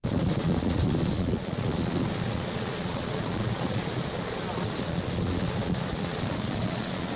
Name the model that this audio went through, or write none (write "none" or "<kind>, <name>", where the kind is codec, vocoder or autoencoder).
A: vocoder, Vocos